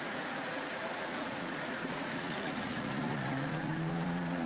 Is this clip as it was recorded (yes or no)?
no